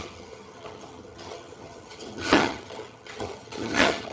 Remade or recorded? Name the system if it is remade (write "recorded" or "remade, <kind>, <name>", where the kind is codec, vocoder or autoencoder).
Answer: remade, vocoder, HiFi-GAN